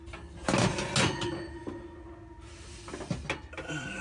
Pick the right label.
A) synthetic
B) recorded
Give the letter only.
B